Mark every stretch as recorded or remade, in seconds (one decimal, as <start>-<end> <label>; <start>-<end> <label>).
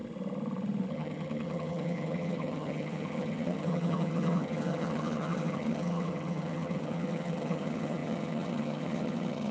0.0-0.9 recorded; 0.9-9.5 remade